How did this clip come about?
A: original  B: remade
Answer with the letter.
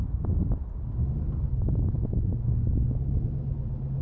A